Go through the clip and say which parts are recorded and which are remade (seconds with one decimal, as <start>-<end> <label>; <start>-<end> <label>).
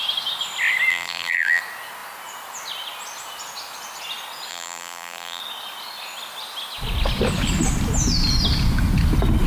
0.0-0.9 recorded; 0.9-1.6 remade; 1.6-4.5 recorded; 4.5-5.4 remade; 5.4-9.5 recorded